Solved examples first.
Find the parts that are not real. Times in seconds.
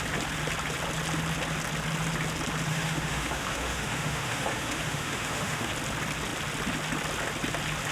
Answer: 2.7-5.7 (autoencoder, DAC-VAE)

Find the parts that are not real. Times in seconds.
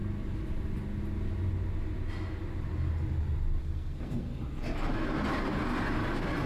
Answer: 3.6-4.3 (codec, SNAC)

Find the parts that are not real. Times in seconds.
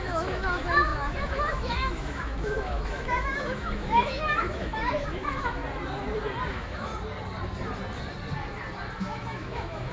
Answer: 0.0-5.6 (autoencoder, DAC-VAE); 6.5-6.9; 9.0-9.9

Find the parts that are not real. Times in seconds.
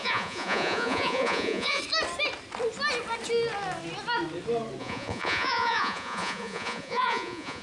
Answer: 0.0-1.8 (vocoder, Vocos); 4.8-7.6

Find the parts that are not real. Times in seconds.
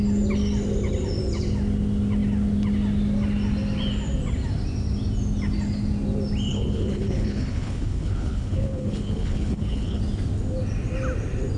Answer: 6.5-10.0 (codec, HILCodec)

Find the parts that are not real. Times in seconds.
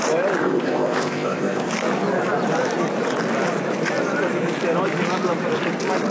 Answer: 0.4-1.7 (codec, ZipCodec)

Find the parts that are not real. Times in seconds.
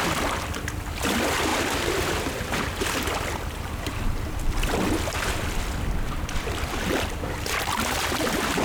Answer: none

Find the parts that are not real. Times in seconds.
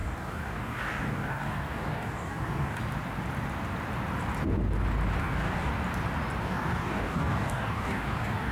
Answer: 0.0-2.8 (codec, DAC); 5.2-5.7; 6.4-8.5